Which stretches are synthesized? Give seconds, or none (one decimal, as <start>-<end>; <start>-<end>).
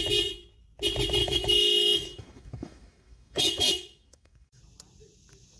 1.2-4.6